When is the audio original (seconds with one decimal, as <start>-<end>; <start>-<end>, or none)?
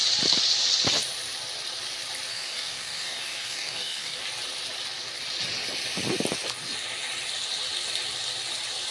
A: 0.0-2.3; 4.2-8.9